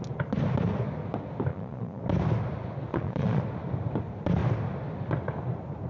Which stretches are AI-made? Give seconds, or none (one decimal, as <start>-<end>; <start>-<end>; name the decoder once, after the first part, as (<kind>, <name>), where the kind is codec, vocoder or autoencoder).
1.5-2.0 (vocoder, Vocos); 2.9-3.4